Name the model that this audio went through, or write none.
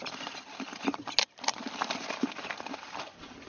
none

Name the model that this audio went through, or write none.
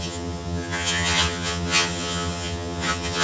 vocoder, HiFi-GAN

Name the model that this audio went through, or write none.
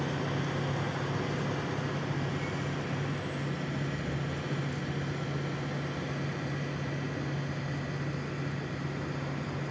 none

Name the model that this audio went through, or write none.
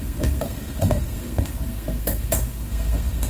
codec, SNAC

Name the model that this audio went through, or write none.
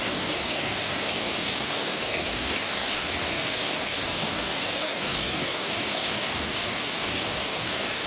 codec, DAC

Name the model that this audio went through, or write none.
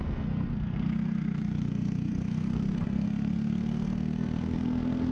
codec, SNAC